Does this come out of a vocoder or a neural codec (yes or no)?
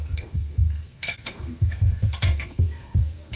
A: yes